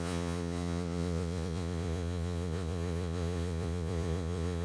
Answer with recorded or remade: remade